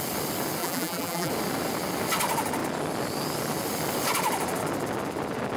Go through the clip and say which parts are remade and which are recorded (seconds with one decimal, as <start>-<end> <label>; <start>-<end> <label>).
0.0-0.6 recorded; 0.6-1.3 remade; 1.3-5.6 recorded